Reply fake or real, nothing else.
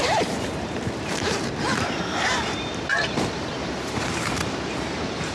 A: fake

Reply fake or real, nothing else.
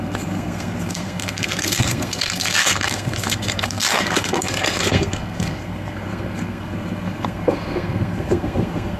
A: fake